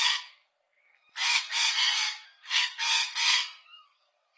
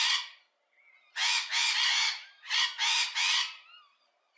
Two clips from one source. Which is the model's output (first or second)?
first